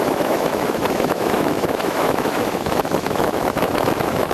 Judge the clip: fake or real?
fake